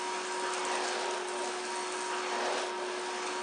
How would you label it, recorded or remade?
recorded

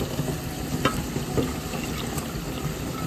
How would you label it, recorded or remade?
recorded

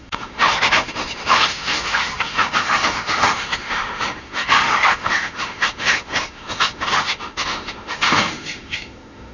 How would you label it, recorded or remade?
remade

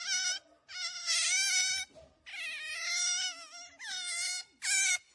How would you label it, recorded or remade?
recorded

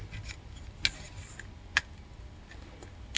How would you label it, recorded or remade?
recorded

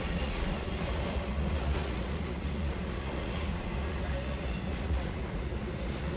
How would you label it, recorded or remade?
remade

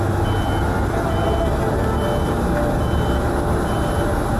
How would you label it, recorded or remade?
recorded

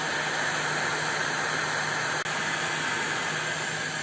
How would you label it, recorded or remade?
recorded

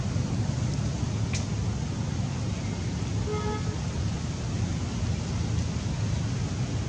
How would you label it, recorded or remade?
recorded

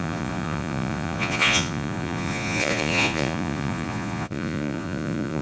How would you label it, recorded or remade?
remade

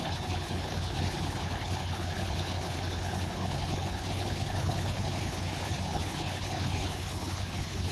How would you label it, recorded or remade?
remade